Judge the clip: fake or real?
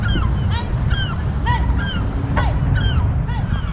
real